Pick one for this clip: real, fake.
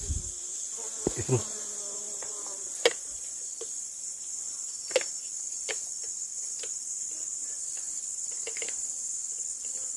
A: real